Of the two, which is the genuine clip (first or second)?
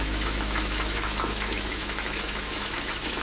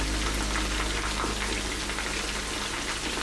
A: second